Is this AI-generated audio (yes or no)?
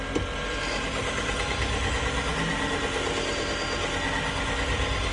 no